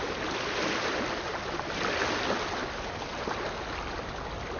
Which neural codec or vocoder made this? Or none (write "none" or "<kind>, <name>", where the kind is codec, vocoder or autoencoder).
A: none